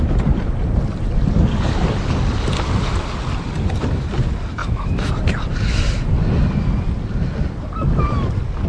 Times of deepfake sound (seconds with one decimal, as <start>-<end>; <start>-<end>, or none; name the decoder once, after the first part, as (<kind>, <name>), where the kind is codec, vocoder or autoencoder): 4.6-5.1 (autoencoder, DAC-VAE)